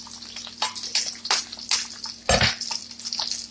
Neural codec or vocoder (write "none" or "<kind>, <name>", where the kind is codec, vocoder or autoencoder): none